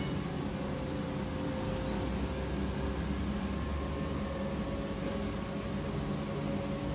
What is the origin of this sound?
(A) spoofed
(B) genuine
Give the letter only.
B